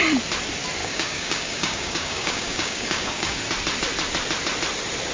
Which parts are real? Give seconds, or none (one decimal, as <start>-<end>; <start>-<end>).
0.0-0.8; 3.4-5.1